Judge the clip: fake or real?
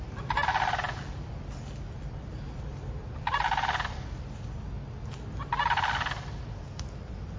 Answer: real